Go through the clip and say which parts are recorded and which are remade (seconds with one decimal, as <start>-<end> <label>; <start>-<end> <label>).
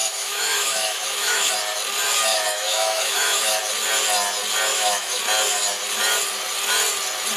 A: 0.0-1.5 remade; 1.5-2.3 recorded; 2.3-3.6 remade; 3.6-4.7 recorded; 4.7-5.2 remade; 5.2-7.4 recorded